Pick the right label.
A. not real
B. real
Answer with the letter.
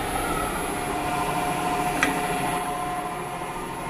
B